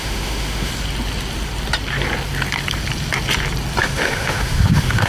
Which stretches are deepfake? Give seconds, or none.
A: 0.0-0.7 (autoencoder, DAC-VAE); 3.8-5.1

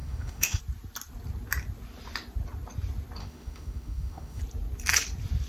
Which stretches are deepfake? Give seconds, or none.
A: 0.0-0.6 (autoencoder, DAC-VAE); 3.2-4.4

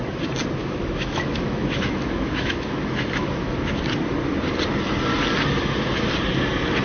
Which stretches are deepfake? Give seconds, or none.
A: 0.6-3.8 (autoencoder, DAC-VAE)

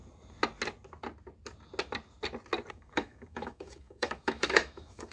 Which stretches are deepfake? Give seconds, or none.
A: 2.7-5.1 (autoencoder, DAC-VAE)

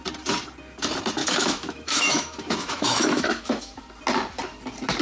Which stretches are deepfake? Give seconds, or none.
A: 1.2-3.8 (autoencoder, DAC-VAE)

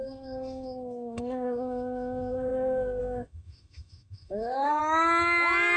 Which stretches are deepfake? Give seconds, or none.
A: 0.0-4.8 (autoencoder, DAC-VAE)